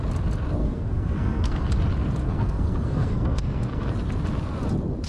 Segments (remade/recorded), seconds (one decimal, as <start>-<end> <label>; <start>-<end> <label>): 0.0-0.6 recorded; 0.6-1.7 remade; 1.7-2.2 recorded; 2.2-3.9 remade; 3.9-5.1 recorded